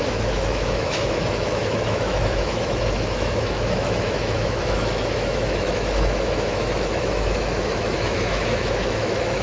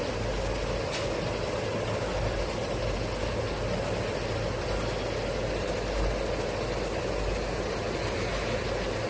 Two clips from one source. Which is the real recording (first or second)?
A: second